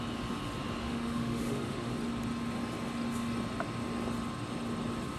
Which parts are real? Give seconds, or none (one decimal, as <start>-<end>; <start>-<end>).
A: 0.0-0.8; 1.9-5.2